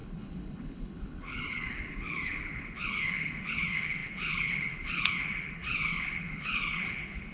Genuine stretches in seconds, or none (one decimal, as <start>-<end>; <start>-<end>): none